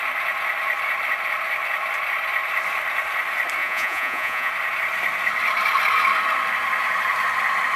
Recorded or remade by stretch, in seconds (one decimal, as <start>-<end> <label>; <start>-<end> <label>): 0.0-3.6 recorded; 3.6-4.5 remade; 4.5-7.8 recorded